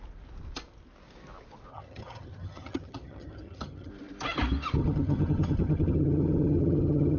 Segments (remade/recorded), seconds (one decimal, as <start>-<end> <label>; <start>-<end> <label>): 0.0-1.7 recorded; 1.7-3.9 remade; 3.9-4.8 recorded; 4.8-7.2 remade